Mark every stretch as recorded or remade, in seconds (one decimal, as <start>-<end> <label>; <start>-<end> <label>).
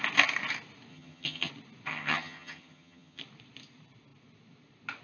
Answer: 0.0-0.9 recorded; 0.9-1.5 remade; 1.5-1.9 recorded; 1.9-3.2 remade; 3.2-5.0 recorded